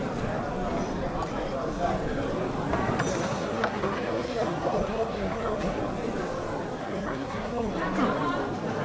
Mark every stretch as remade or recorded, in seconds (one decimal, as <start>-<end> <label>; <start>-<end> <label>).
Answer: 0.0-3.1 recorded; 3.1-5.8 remade; 5.8-6.8 recorded; 6.8-7.7 remade; 7.7-8.8 recorded